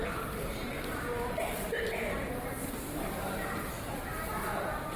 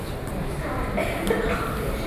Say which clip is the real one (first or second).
second